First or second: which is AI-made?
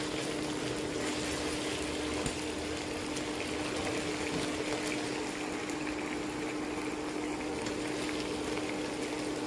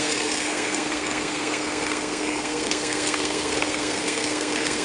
second